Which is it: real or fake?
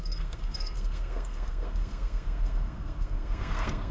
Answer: fake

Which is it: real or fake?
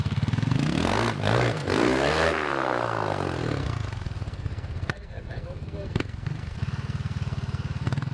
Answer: fake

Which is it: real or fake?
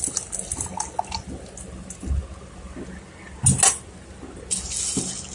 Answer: real